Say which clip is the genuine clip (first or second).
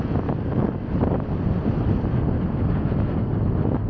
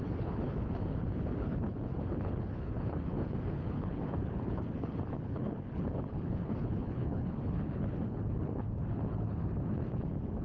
first